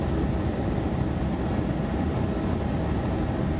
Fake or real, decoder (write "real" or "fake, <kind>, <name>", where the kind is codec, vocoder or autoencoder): real